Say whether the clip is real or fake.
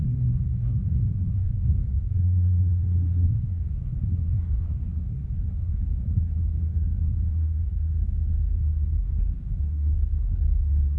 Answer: fake